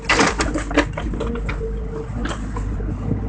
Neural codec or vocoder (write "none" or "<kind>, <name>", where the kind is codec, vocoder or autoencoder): none